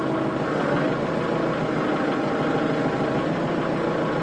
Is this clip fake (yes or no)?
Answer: no